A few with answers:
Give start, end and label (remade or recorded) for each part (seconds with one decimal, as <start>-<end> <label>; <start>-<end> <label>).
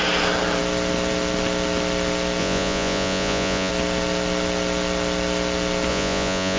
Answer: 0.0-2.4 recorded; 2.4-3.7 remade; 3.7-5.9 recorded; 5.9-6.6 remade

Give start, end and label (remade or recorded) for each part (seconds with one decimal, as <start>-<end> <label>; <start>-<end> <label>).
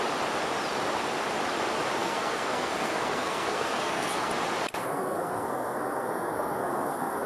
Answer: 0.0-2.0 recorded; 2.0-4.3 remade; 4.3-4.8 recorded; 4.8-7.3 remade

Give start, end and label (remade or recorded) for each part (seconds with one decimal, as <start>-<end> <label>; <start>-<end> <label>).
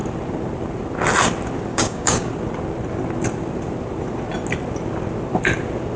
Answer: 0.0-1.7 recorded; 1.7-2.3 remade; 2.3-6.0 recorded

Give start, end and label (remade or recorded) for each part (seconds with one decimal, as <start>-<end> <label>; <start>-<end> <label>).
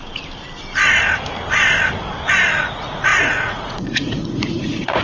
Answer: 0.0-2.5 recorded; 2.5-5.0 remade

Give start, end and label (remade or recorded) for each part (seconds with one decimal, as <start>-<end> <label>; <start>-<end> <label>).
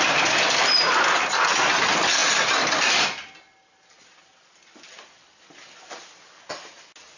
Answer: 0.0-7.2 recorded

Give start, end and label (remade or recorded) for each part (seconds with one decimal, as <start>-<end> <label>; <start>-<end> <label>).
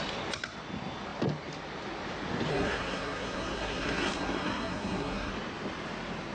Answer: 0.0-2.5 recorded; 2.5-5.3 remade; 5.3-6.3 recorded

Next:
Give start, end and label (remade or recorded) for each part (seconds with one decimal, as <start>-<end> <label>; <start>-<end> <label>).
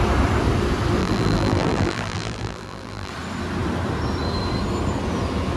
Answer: 0.0-1.0 recorded; 1.0-3.1 remade; 3.1-5.6 recorded